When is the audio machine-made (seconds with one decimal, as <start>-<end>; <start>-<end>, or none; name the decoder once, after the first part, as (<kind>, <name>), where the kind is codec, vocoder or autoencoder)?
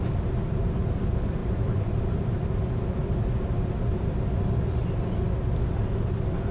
none